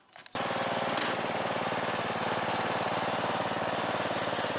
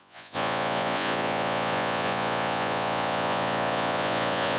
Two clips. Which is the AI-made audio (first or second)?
second